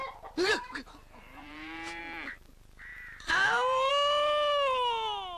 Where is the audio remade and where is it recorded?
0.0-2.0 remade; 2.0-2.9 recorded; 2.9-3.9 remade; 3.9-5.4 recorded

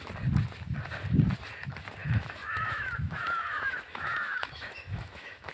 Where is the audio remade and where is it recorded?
0.0-2.0 recorded; 2.0-5.5 remade

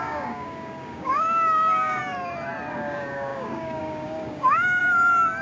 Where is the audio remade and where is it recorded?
0.0-2.0 remade; 2.0-2.7 recorded; 2.7-4.8 remade; 4.8-5.4 recorded

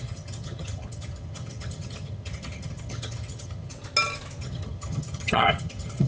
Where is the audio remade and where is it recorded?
0.0-3.7 remade; 3.7-4.4 recorded; 4.4-6.1 remade

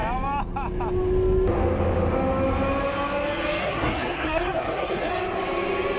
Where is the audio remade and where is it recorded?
0.0-3.6 recorded; 3.6-5.1 remade; 5.1-6.0 recorded

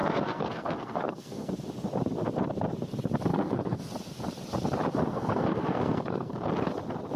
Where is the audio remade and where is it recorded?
0.0-1.5 remade; 1.5-3.3 recorded; 3.3-3.8 remade; 3.8-5.1 recorded; 5.1-6.5 remade; 6.5-7.2 recorded